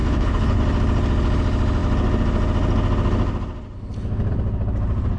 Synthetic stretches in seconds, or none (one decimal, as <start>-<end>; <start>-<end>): 0.0-0.6